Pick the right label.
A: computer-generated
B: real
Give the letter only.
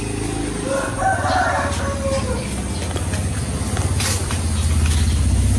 B